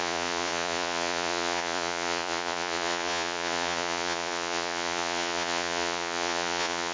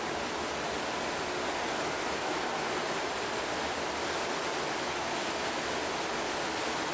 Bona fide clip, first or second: second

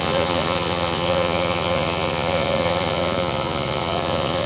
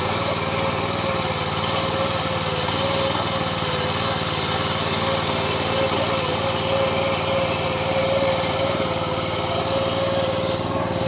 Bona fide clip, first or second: second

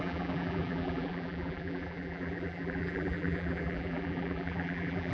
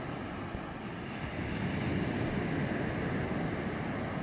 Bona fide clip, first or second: second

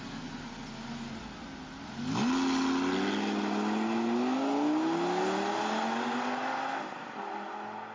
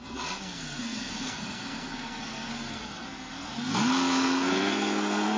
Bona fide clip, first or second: first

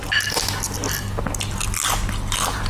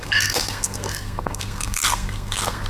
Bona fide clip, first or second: first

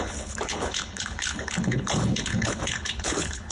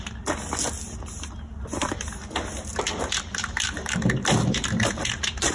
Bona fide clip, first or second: second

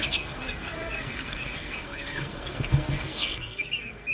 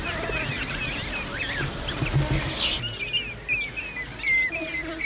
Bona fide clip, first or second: second